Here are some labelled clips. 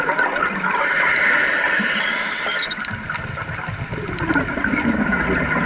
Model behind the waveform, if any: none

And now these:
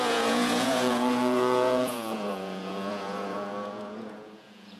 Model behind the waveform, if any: vocoder, Vocos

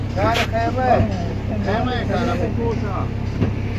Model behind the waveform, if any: none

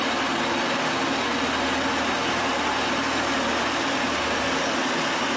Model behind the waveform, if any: none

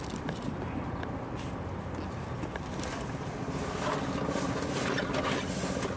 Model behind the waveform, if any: none